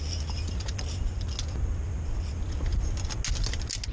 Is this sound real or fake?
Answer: real